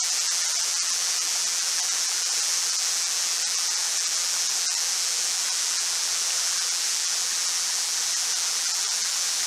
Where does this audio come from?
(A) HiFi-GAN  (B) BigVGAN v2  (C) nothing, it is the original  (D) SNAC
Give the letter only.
B